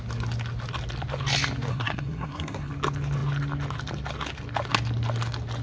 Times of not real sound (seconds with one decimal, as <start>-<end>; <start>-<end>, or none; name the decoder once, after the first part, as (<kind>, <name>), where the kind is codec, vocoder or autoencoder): 1.7-2.7 (codec, SNAC)